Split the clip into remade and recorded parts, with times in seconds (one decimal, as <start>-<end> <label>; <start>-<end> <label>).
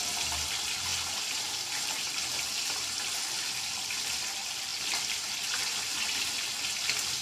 0.0-0.9 recorded; 0.9-3.2 remade; 3.2-4.7 recorded; 4.7-5.3 remade; 5.3-5.9 recorded; 5.9-6.5 remade; 6.5-7.2 recorded